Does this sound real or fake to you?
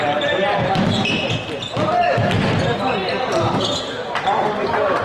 real